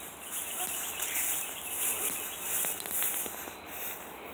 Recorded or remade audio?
recorded